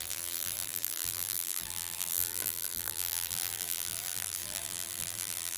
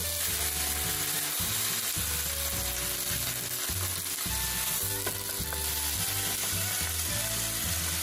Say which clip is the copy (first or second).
first